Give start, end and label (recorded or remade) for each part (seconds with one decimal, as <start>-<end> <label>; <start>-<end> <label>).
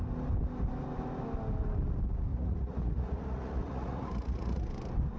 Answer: 0.0-2.3 recorded; 2.3-4.7 remade; 4.7-5.2 recorded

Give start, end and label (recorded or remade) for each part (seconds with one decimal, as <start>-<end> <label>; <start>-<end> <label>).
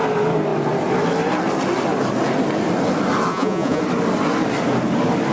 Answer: 0.0-3.3 recorded; 3.3-3.8 remade; 3.8-5.3 recorded